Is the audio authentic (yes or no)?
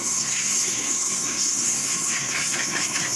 no